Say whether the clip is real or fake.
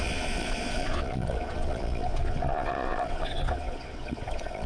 fake